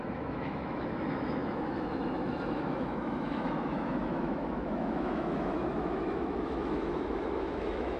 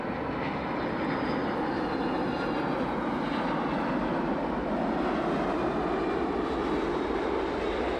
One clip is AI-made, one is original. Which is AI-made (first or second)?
first